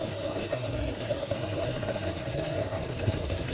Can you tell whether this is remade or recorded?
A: remade